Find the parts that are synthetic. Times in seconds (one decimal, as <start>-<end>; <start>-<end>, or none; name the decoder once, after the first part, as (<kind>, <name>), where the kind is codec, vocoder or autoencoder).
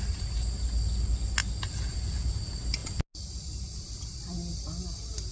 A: none